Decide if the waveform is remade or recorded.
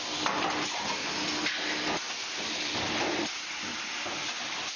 recorded